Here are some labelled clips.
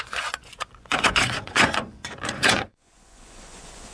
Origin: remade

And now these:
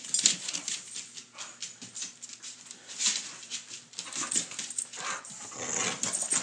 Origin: recorded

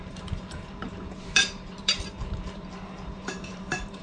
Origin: remade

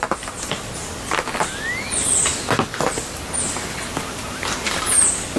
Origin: recorded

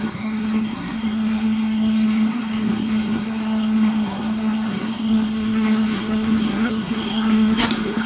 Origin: remade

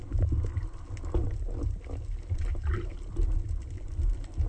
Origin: recorded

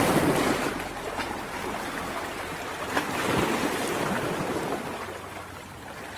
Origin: recorded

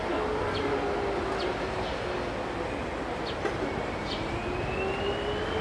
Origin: recorded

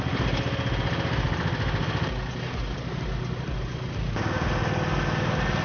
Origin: recorded